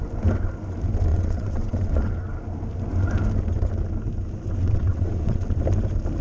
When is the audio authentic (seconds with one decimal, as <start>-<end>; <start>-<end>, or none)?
0.0-1.1; 2.1-4.6; 5.6-6.2